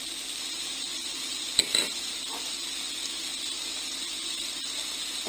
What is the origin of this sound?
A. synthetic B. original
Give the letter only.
B